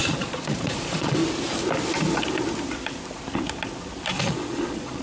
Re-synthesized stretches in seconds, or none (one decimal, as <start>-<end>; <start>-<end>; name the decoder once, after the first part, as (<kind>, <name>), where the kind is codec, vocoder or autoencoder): 0.0-1.2 (vocoder, Vocos); 4.2-5.0